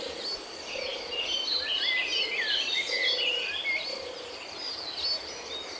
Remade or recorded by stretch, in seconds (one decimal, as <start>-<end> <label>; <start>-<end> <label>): 0.0-5.8 recorded